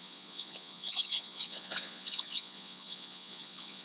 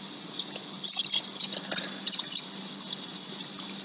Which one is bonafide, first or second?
second